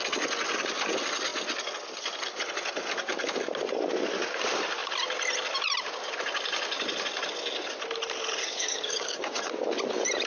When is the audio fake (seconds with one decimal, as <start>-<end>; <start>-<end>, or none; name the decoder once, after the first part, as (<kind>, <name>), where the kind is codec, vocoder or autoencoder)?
8.4-9.5 (codec, DAC)